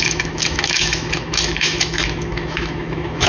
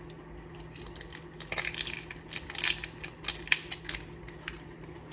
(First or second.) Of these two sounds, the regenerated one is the first